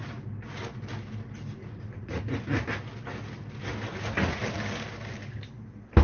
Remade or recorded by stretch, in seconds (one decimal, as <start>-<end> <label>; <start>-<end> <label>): 0.0-1.6 recorded; 1.6-2.2 remade; 2.2-3.9 recorded; 3.9-4.4 remade; 4.4-6.0 recorded